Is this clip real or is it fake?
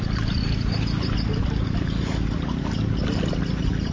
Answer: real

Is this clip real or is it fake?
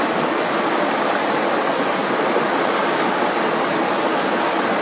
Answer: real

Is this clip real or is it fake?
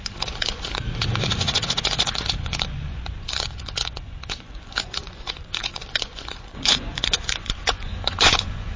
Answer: fake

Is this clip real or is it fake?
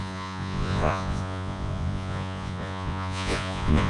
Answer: fake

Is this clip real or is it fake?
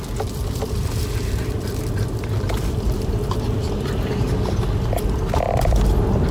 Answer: real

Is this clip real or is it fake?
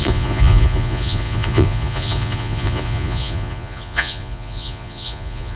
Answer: fake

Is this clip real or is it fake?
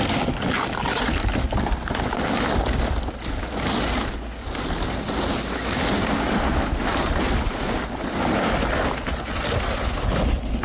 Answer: real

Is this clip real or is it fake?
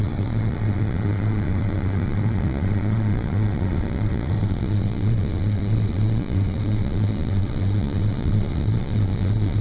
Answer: fake